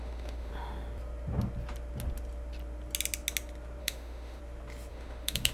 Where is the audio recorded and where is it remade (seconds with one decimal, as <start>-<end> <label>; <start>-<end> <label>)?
0.0-0.5 remade; 0.5-3.8 recorded; 3.8-4.4 remade; 4.4-4.9 recorded; 4.9-5.5 remade